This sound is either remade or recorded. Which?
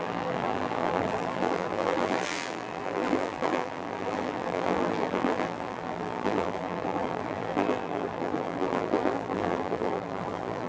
remade